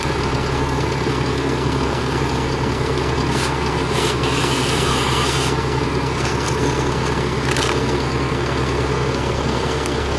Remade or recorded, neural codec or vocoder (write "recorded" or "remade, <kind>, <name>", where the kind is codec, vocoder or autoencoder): remade, codec, SNAC